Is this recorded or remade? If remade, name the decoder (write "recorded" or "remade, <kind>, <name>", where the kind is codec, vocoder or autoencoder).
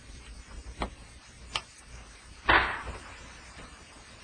remade, vocoder, BigVGAN v2